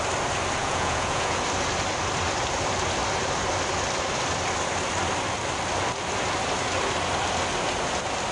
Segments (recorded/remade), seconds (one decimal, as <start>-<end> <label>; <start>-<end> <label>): 0.0-0.6 recorded; 0.6-1.4 remade; 1.4-8.3 recorded